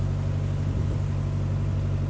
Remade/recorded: recorded